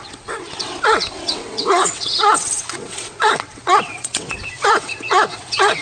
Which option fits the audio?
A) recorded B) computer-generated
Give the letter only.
B